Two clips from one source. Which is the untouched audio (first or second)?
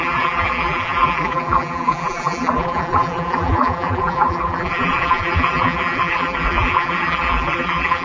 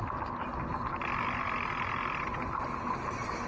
second